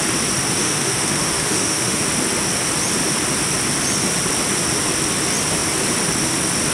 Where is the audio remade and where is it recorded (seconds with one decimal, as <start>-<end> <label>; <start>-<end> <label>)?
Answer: 0.0-0.6 recorded; 0.6-2.0 remade; 2.0-6.7 recorded